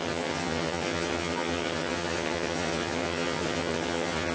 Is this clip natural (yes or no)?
no